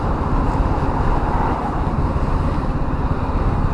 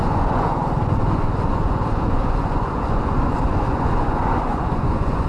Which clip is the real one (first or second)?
first